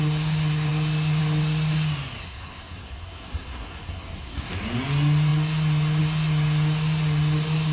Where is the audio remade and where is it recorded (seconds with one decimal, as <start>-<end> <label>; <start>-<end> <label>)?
0.0-2.2 recorded; 2.2-4.5 remade; 4.5-7.7 recorded